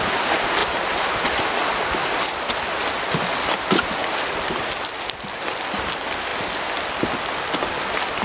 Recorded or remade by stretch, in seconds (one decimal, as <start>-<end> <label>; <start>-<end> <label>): 0.0-8.2 recorded